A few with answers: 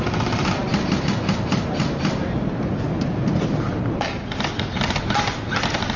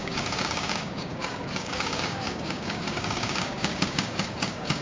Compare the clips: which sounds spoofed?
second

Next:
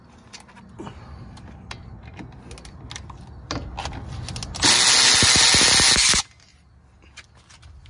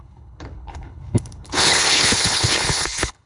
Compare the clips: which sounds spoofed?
second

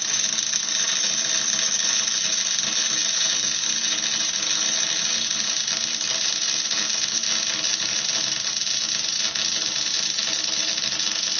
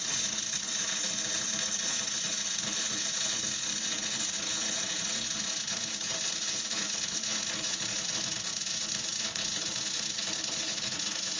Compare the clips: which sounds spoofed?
second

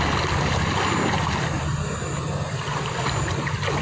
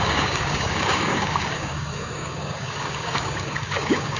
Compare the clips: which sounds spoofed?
second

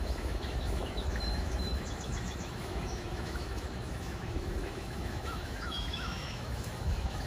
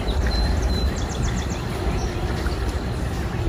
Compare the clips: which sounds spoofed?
first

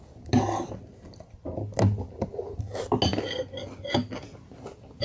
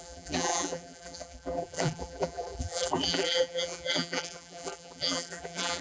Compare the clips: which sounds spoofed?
second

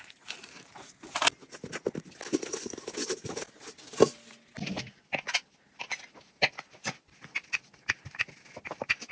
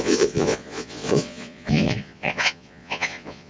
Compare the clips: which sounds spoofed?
second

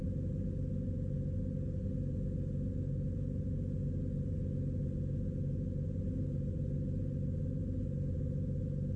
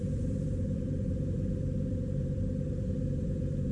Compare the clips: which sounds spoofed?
second